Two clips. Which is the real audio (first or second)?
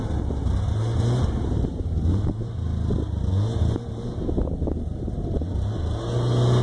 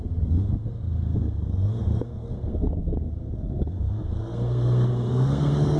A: first